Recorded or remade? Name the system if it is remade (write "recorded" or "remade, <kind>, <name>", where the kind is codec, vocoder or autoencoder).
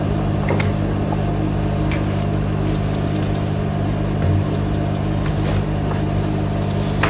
recorded